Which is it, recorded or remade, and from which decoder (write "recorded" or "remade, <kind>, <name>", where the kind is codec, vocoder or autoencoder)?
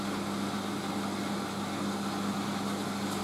recorded